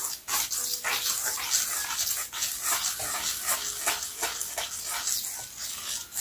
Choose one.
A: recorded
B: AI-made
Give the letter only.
A